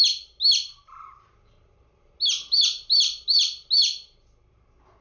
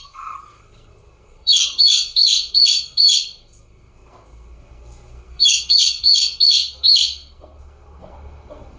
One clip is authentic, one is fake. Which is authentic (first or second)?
first